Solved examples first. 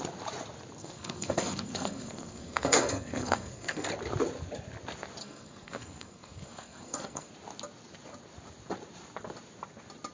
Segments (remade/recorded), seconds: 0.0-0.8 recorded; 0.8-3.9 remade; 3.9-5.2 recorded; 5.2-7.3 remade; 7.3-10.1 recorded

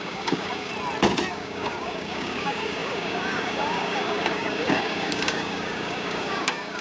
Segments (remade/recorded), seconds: 0.0-0.7 remade; 0.7-1.3 recorded; 1.3-6.8 remade